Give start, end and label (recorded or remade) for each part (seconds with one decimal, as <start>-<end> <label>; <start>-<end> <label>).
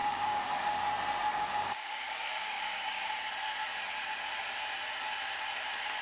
0.0-0.8 remade; 0.8-1.3 recorded; 1.3-3.0 remade; 3.0-6.0 recorded